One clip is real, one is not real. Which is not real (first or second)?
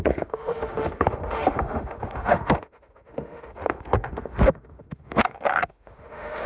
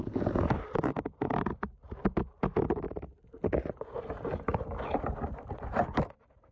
first